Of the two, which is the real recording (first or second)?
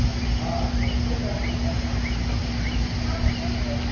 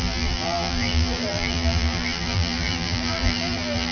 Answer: first